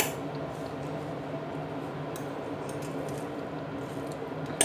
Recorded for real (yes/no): yes